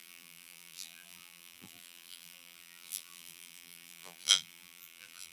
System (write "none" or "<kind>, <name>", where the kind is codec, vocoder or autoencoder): vocoder, BigVGAN v2